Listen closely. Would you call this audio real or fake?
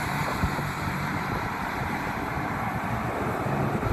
fake